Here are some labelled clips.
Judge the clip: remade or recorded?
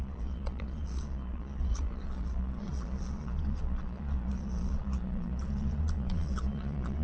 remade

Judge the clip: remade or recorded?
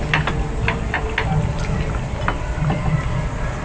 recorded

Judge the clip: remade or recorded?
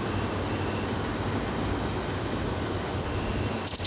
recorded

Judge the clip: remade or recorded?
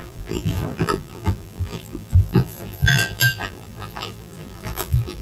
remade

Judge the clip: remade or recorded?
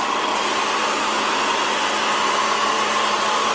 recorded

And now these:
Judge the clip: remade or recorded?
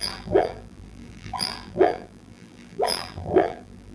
remade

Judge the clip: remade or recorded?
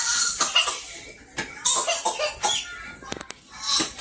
recorded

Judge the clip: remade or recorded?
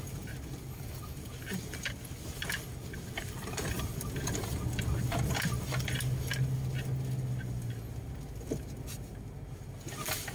recorded